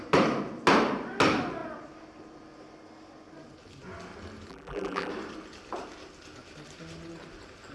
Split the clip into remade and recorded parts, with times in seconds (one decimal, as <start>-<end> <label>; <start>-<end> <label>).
0.0-4.5 recorded; 4.5-5.1 remade; 5.1-7.7 recorded